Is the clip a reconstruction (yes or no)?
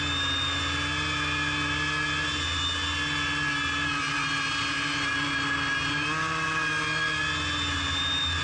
no